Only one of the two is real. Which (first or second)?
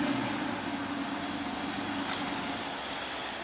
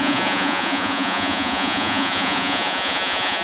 first